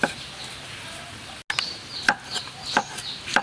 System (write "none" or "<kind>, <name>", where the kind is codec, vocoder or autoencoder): none